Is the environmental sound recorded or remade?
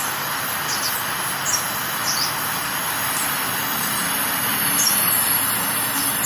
recorded